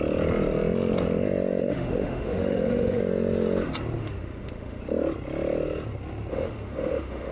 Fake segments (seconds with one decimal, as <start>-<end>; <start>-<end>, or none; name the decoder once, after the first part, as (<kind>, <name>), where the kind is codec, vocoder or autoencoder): 1.6-3.0 (autoencoder, DAC-VAE); 4.0-4.8; 6.3-7.3